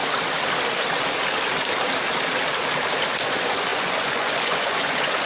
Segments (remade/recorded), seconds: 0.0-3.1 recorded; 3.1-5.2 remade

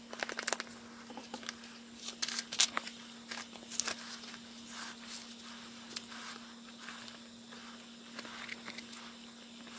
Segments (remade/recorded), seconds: 0.0-9.8 recorded

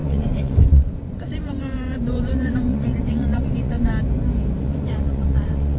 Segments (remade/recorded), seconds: 0.0-3.9 remade; 3.9-4.6 recorded; 4.6-5.8 remade

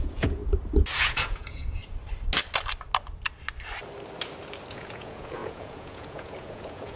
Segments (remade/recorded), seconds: 0.0-0.4 remade; 0.4-1.0 recorded; 1.0-1.8 remade; 1.8-4.7 recorded; 4.7-7.0 remade

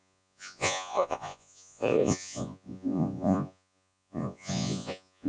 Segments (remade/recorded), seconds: 0.0-5.3 remade

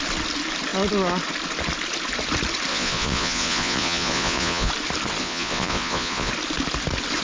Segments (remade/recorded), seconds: 0.0-2.7 recorded; 2.7-4.7 remade; 4.7-5.2 recorded; 5.2-6.3 remade; 6.3-7.2 recorded

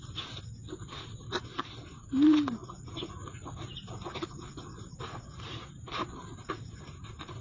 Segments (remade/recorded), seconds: 0.0-7.4 recorded